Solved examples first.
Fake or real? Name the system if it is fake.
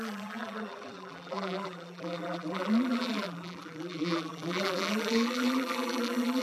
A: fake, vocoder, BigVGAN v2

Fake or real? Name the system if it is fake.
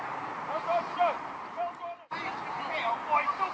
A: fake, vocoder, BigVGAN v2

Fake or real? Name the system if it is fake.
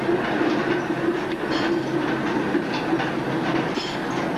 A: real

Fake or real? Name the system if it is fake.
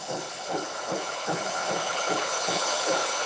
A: fake, codec, HILCodec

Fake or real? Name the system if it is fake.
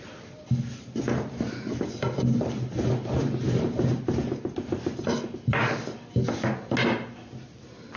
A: real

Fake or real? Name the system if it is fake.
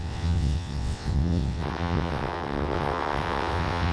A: fake, vocoder, WaveNeXt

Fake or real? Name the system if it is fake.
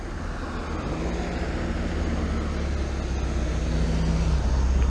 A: real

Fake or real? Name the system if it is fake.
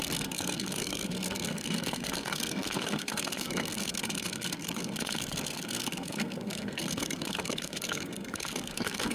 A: fake, codec, SNAC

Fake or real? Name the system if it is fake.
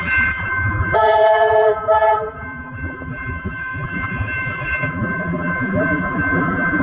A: fake, vocoder, BigVGAN v2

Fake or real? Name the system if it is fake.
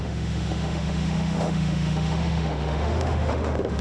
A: fake, autoencoder, DAC-VAE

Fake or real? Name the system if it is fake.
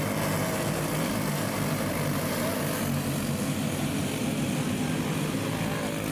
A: real